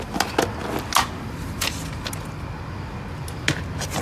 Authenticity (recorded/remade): recorded